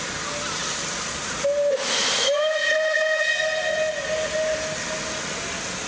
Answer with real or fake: real